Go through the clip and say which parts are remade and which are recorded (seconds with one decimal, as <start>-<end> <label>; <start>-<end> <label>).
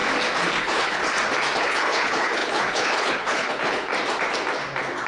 0.0-0.6 recorded; 0.6-1.0 remade; 1.0-1.6 recorded; 1.6-3.9 remade; 3.9-5.1 recorded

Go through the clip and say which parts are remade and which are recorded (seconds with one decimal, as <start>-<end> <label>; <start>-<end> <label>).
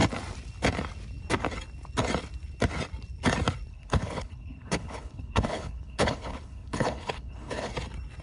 0.0-3.7 recorded; 3.7-7.7 remade; 7.7-8.2 recorded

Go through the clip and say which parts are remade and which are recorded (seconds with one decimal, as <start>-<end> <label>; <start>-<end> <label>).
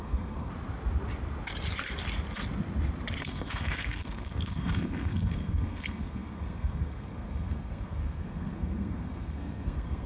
0.0-0.5 remade; 0.5-3.2 recorded; 3.2-10.1 remade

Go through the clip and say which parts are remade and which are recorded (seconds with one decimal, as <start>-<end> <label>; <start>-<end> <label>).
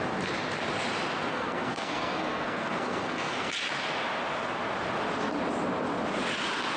0.0-1.3 recorded; 1.3-3.5 remade; 3.5-6.8 recorded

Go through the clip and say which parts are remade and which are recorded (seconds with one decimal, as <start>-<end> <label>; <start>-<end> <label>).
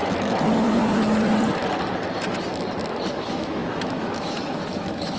0.0-3.1 recorded; 3.1-5.2 remade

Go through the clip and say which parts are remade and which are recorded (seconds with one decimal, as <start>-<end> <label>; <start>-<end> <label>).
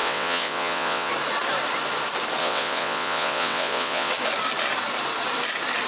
0.0-1.1 remade; 1.1-2.4 recorded; 2.4-4.1 remade; 4.1-5.9 recorded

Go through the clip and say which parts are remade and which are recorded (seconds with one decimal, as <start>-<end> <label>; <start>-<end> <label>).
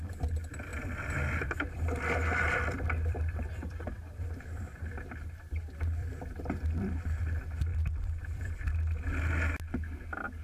0.0-0.7 recorded; 0.7-4.6 remade; 4.6-6.0 recorded; 6.0-7.0 remade; 7.0-7.7 recorded; 7.7-8.7 remade; 8.7-10.4 recorded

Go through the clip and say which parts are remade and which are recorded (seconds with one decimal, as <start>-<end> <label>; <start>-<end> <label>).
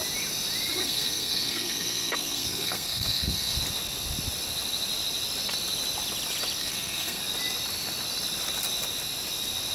0.0-0.8 recorded; 0.8-3.6 remade; 3.6-6.6 recorded; 6.6-7.2 remade; 7.2-9.7 recorded